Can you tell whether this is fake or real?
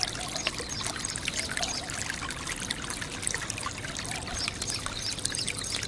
real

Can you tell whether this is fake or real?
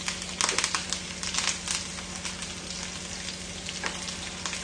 real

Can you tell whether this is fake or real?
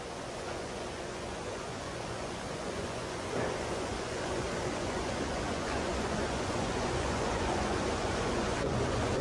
fake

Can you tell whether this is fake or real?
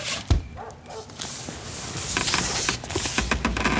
real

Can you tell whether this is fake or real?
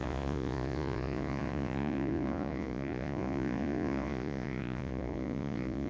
fake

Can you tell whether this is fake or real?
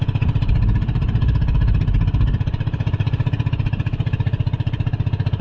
real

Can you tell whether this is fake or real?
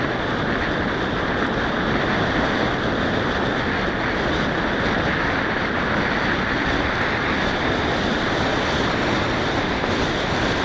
real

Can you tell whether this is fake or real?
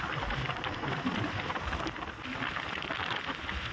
real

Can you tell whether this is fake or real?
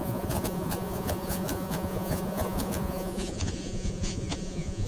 fake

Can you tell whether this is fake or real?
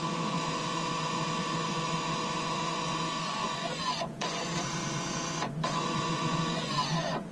fake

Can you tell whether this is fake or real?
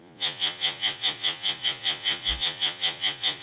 fake